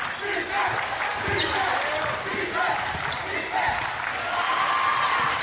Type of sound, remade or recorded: recorded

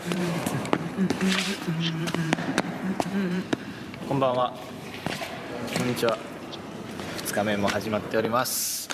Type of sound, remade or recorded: remade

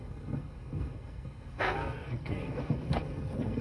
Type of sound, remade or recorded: remade